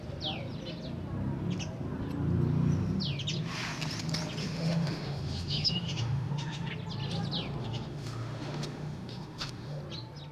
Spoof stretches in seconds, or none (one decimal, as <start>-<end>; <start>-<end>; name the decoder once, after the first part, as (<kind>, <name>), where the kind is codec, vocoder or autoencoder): 4.4-6.7 (autoencoder, DAC-VAE); 7.6-9.8